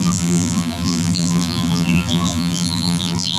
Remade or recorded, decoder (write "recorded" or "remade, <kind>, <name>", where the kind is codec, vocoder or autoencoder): remade, vocoder, BigVGAN v2